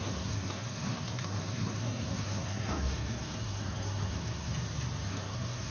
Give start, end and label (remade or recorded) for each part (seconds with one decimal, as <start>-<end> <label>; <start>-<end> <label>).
0.0-4.5 remade; 4.5-5.1 recorded; 5.1-5.7 remade